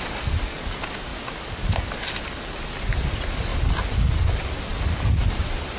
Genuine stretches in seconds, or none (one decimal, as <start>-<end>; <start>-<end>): 0.0-5.8